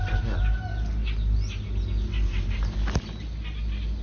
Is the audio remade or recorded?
recorded